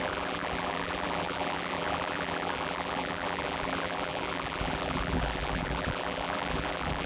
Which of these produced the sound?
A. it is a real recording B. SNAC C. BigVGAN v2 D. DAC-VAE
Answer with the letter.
C